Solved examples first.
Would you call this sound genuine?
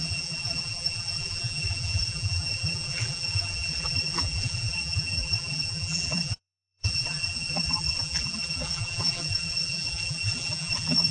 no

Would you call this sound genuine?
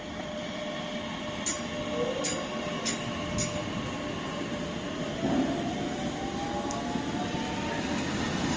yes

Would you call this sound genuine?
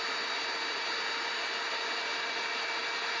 yes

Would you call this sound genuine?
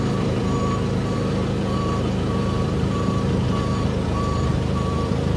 no